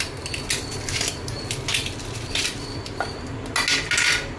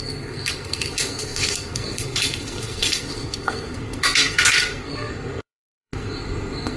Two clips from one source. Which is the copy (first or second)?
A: second